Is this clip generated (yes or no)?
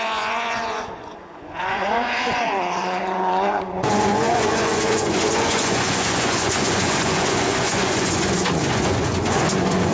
yes